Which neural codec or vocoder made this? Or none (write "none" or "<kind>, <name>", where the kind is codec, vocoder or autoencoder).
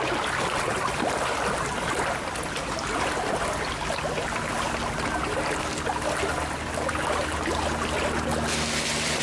none